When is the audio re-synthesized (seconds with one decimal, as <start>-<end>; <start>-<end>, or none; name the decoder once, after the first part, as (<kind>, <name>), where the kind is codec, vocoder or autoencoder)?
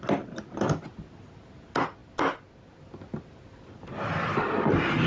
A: none